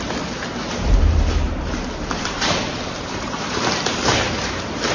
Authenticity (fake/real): fake